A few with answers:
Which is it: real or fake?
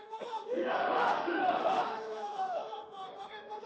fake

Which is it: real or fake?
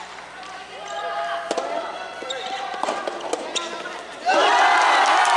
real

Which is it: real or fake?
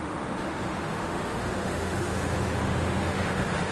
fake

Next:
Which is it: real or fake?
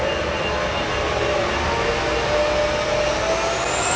real